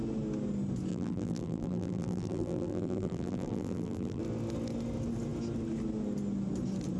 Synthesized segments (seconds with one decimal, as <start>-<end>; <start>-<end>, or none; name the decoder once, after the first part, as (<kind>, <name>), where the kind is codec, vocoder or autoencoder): 0.9-4.2 (vocoder, BigVGAN v2)